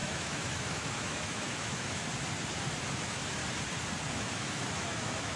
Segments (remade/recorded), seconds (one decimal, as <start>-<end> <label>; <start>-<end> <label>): 0.0-2.0 remade; 2.0-2.9 recorded; 2.9-3.4 remade; 3.4-4.1 recorded; 4.1-5.4 remade